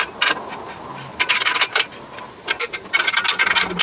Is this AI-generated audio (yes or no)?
no